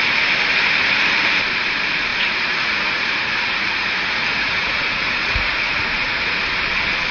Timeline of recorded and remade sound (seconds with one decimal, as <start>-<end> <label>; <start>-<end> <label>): 0.0-2.1 recorded; 2.1-6.4 remade; 6.4-7.1 recorded